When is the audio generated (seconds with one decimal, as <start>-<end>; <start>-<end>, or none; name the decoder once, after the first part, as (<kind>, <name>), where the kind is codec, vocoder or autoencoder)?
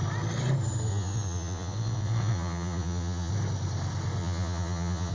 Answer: 0.9-3.3 (vocoder, Vocos); 4.2-5.1